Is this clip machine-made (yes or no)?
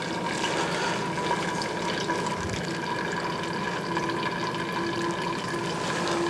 no